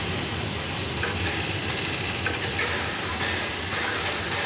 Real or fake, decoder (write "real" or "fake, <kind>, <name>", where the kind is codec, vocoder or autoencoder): real